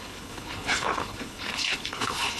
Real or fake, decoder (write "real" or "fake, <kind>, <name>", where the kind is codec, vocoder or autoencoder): fake, codec, HILCodec